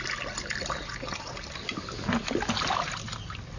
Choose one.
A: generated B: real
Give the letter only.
B